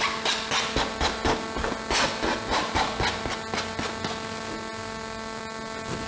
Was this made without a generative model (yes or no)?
yes